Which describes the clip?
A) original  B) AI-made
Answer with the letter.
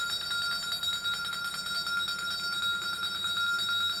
A